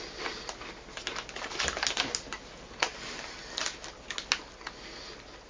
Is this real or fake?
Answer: real